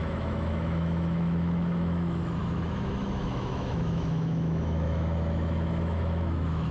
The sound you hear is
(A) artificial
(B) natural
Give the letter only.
A